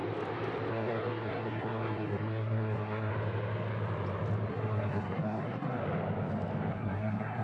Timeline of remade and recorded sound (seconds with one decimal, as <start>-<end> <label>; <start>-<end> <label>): 0.0-0.7 recorded; 0.7-3.1 remade; 3.1-4.5 recorded; 4.5-5.8 remade; 5.8-6.7 recorded; 6.7-7.4 remade